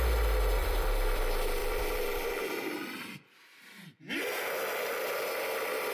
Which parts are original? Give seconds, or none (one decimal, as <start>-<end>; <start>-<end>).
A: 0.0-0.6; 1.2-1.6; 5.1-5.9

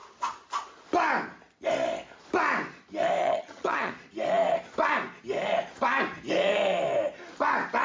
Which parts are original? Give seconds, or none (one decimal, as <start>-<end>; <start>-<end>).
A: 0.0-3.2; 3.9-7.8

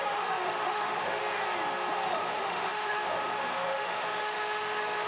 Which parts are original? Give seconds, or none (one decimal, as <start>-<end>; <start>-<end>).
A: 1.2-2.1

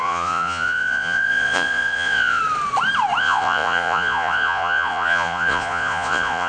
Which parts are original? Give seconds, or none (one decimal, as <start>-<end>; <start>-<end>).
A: 2.4-3.2

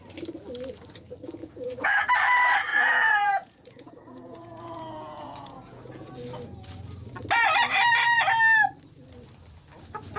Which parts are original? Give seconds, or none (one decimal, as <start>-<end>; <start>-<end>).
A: 0.0-1.4; 2.1-2.7; 6.1-10.2